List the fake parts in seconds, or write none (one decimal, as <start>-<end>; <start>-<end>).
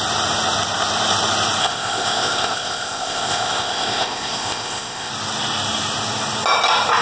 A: 1.6-5.1